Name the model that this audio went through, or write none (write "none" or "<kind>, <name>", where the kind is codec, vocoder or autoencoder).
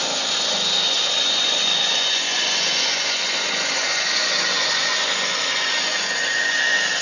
vocoder, Vocos